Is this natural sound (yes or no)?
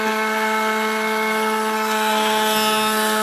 no